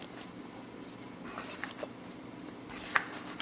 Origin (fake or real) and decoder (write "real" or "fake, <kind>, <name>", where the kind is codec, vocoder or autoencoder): real